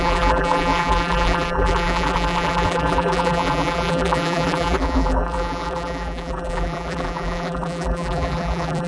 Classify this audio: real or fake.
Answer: fake